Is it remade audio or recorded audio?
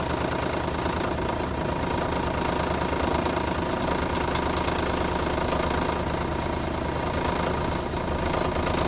recorded